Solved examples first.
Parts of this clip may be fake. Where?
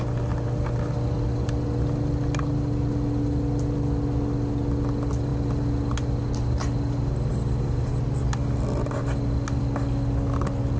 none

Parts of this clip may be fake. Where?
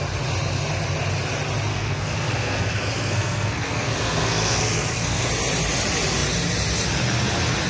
1.7-5.3 (codec, SNAC)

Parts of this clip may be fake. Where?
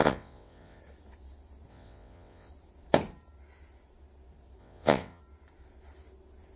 0.0-0.8 (vocoder, WaveNeXt); 1.7-2.5; 4.6-5.2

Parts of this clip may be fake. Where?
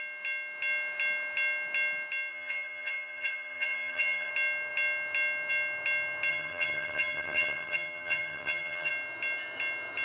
2.3-4.3 (vocoder, HiFi-GAN); 6.3-8.9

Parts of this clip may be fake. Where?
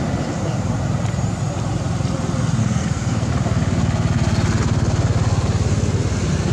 2.6-3.3 (codec, SNAC)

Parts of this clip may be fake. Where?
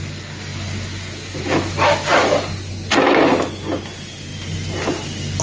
none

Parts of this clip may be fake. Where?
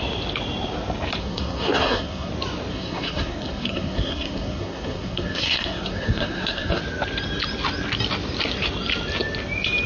1.2-2.3 (codec, SNAC); 2.7-6.8